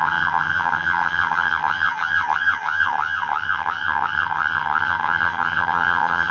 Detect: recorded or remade remade